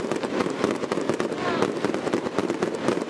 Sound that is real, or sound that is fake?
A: real